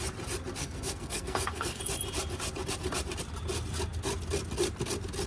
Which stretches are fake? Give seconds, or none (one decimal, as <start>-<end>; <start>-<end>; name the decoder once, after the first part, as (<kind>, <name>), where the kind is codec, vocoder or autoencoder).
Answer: 0.6-1.8 (codec, SNAC)